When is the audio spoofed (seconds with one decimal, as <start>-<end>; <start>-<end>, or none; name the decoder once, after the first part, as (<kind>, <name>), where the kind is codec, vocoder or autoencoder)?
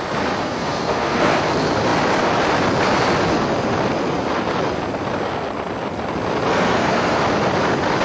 0.4-1.4 (codec, SNAC); 6.5-7.2